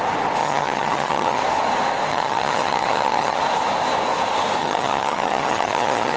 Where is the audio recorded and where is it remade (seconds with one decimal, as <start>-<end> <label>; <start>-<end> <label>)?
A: 0.0-0.4 recorded; 0.4-1.4 remade; 1.4-2.1 recorded; 2.1-3.4 remade; 3.4-4.6 recorded; 4.6-6.2 remade